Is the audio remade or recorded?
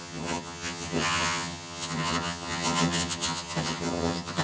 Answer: remade